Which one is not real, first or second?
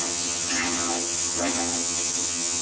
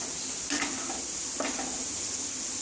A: first